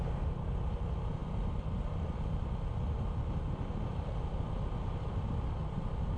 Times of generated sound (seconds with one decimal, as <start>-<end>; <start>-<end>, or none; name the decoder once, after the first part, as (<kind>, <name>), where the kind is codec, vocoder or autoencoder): none

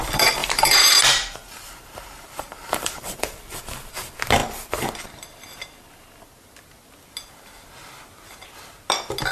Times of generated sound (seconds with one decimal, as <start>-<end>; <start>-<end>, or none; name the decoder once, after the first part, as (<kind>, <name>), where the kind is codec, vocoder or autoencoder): 0.4-3.9 (vocoder, BigVGAN v2); 4.4-4.9

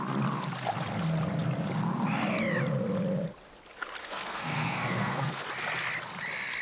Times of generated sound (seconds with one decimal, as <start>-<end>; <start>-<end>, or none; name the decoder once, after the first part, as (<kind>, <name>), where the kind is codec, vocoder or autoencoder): 4.0-5.4 (codec, SNAC)